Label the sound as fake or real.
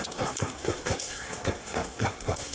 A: fake